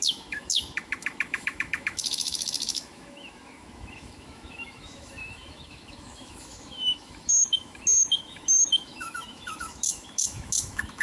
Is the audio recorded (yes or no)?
no